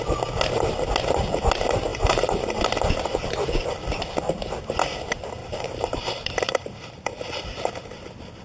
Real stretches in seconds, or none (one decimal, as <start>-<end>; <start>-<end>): 0.0-1.9; 2.6-5.4; 7.4-8.4